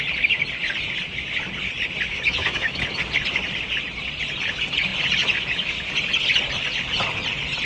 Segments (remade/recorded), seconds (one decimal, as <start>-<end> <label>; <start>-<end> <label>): 0.0-2.1 recorded; 2.1-2.8 remade; 2.8-7.7 recorded